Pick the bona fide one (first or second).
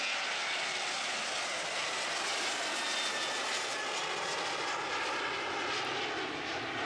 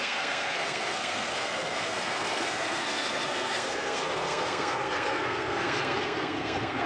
first